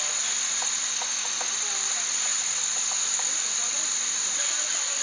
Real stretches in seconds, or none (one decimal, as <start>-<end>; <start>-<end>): 0.0-5.0